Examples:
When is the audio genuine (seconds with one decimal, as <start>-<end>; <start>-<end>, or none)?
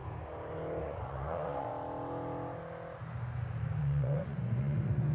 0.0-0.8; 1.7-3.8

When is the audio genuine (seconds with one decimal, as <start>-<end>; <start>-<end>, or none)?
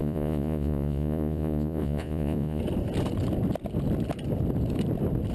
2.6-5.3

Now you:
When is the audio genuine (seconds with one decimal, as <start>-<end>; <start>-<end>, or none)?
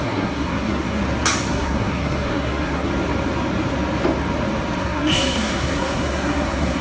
1.0-1.5; 2.9-4.8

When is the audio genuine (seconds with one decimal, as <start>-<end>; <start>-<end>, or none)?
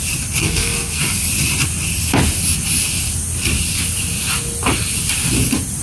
0.0-0.4; 1.0-5.8